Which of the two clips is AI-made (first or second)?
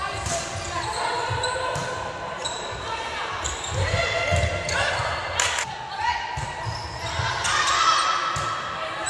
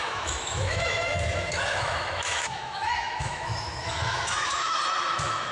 second